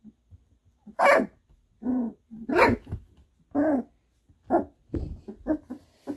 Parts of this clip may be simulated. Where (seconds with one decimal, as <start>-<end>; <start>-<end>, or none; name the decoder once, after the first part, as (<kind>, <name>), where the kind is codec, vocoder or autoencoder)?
none